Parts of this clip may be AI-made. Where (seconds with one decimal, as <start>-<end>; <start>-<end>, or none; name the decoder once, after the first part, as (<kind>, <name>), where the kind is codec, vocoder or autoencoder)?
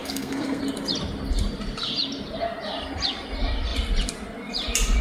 0.0-0.6 (codec, SNAC)